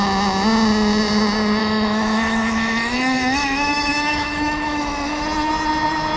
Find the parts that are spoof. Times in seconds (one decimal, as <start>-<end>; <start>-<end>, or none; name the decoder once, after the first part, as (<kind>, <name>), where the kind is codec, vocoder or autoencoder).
1.6-5.2 (autoencoder, DAC-VAE)